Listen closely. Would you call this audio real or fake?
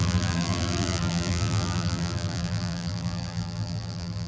fake